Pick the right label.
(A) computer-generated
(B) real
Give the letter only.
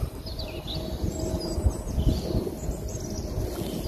B